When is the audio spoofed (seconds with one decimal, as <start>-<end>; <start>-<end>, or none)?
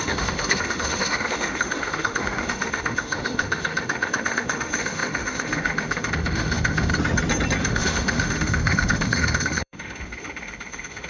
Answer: 0.0-6.9; 7.6-11.1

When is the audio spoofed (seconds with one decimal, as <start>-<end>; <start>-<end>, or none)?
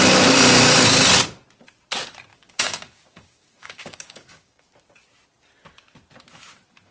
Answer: 2.3-4.7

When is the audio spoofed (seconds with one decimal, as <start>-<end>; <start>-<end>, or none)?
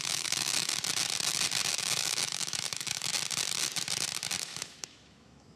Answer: 0.0-0.7; 1.7-3.1; 4.4-5.6